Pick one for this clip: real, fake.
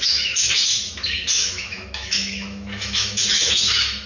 fake